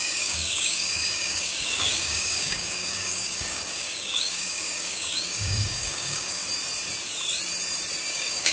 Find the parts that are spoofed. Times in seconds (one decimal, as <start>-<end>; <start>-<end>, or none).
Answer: 0.0-6.4; 8.0-8.5